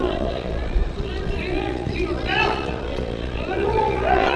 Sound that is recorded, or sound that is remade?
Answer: remade